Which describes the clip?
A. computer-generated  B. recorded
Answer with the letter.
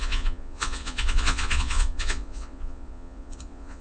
A